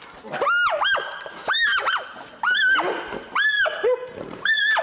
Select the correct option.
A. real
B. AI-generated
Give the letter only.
A